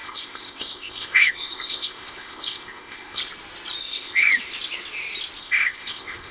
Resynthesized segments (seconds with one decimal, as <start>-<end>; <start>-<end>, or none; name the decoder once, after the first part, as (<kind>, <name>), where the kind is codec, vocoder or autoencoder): 0.0-3.2 (codec, ZipCodec); 3.8-4.3; 5.4-6.3